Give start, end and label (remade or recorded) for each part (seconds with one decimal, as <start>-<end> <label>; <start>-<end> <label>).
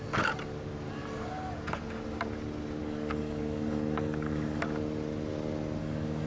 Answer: 0.0-2.8 recorded; 2.8-4.6 remade; 4.6-5.8 recorded; 5.8-6.3 remade